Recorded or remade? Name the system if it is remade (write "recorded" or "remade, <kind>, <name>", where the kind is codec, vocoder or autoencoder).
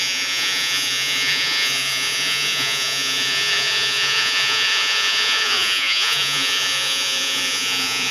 remade, vocoder, Vocos